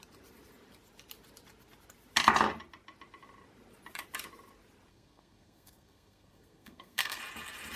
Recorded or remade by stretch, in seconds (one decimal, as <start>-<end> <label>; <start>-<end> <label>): 0.0-4.9 recorded; 4.9-7.2 remade; 7.2-7.8 recorded